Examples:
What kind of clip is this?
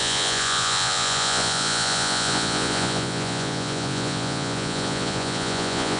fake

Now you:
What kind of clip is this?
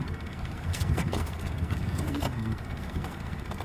fake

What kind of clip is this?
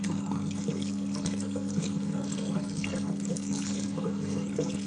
fake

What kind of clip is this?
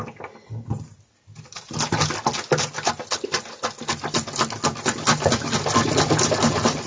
real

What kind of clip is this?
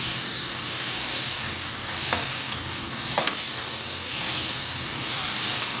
fake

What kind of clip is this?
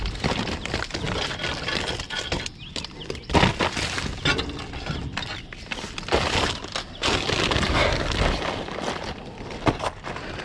real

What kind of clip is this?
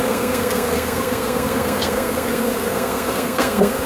fake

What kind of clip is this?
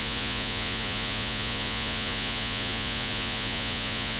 fake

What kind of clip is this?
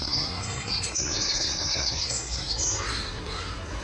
fake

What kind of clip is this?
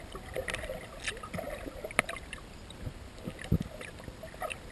fake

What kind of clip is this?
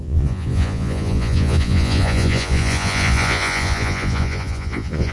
fake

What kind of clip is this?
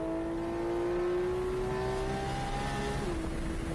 real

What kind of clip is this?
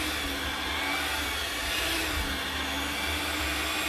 real